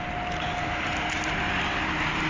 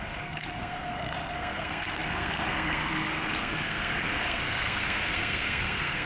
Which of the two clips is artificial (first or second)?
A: second